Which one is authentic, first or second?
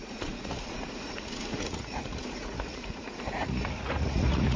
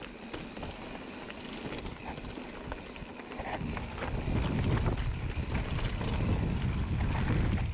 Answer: second